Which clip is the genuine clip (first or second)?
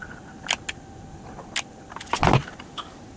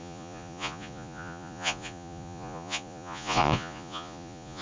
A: first